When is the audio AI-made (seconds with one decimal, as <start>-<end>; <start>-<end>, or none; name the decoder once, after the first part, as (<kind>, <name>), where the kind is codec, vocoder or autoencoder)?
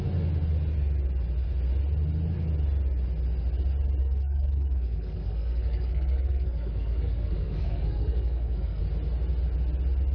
4.0-8.8 (codec, SNAC)